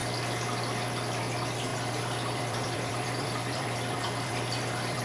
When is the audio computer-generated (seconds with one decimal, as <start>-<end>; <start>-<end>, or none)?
1.7-5.0